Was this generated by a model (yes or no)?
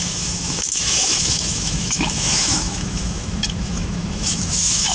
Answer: yes